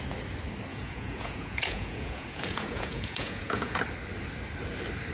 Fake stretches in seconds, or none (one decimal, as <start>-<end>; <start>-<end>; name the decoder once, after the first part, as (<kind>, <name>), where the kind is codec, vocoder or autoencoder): 0.7-3.8 (vocoder, Vocos)